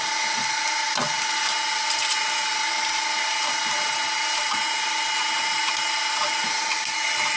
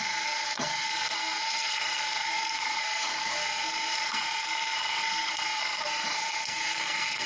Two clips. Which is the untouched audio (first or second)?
first